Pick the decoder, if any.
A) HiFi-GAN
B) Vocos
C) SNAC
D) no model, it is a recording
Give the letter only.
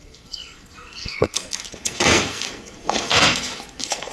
C